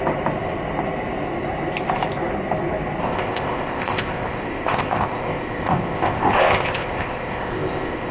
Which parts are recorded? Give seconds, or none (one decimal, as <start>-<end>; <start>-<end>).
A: 0.0-3.0